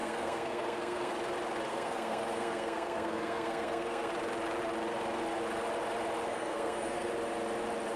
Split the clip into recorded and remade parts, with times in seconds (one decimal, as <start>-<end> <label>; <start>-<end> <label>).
0.0-1.1 remade; 1.1-1.7 recorded; 1.7-4.1 remade; 4.1-6.3 recorded; 6.3-7.1 remade; 7.1-8.0 recorded